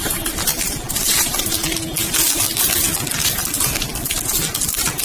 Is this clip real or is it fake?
real